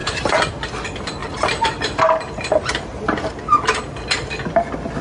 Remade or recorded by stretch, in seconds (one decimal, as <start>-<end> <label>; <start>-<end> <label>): 0.0-0.5 remade; 0.5-1.2 recorded; 1.2-3.8 remade; 3.8-5.0 recorded